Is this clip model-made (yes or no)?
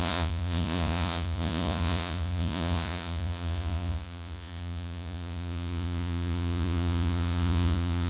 yes